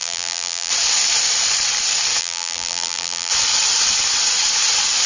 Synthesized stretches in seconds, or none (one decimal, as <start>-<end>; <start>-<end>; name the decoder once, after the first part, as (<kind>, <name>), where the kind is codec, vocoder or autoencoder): 0.0-0.7 (vocoder, BigVGAN v2); 2.2-3.3